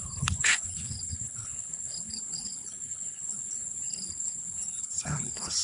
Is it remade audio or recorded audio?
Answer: remade